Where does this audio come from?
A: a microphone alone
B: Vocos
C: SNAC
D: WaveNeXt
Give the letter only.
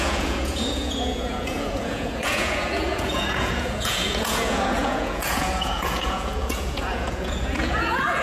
B